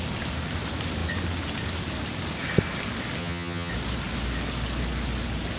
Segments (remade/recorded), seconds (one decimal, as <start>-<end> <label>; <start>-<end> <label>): 0.0-3.2 recorded; 3.2-3.7 remade; 3.7-5.6 recorded